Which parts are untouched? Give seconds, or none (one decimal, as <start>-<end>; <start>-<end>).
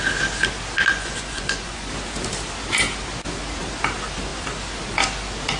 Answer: 0.0-0.9; 1.9-5.6